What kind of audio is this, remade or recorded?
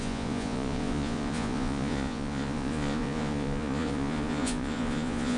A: remade